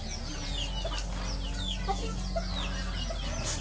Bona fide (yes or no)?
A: yes